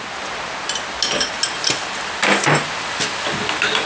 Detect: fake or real real